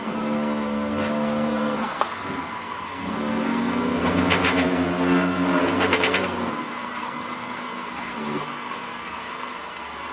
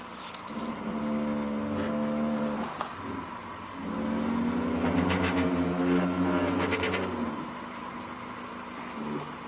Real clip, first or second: second